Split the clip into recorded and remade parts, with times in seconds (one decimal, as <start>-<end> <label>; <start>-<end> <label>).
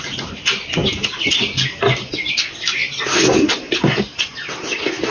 0.0-5.1 recorded